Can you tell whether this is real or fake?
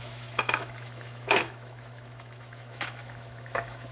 fake